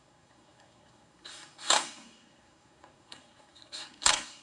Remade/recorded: remade